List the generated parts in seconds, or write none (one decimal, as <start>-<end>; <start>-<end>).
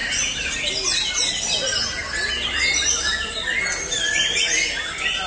none